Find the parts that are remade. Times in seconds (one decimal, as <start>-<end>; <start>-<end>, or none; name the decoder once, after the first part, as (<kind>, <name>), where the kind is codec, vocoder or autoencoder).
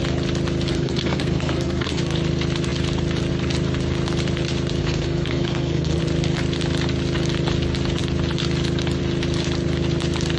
0.7-2.0 (codec, SNAC); 4.8-6.0